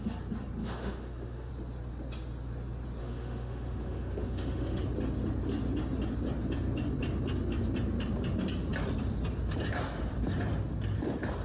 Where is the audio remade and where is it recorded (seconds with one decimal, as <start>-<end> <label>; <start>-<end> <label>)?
0.0-0.6 recorded; 0.6-1.5 remade; 1.5-3.0 recorded; 3.0-4.8 remade; 4.8-11.4 recorded